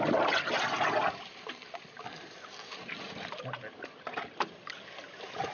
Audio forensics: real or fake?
real